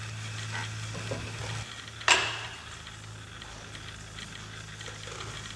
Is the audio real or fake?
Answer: real